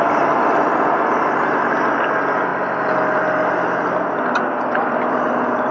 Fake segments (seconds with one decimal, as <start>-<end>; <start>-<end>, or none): none

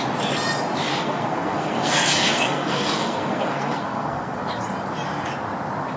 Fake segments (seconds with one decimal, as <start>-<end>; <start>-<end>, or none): 0.9-4.5